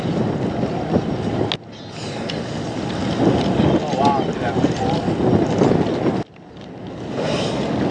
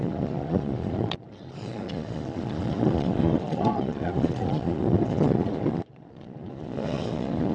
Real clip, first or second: first